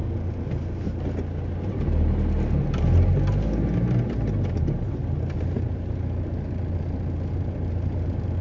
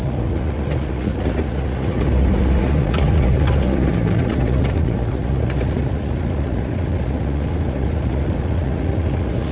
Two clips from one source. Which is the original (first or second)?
first